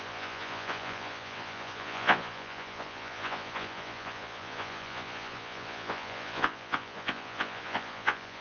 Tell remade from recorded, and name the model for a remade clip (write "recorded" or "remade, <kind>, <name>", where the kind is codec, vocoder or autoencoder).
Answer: remade, vocoder, Vocos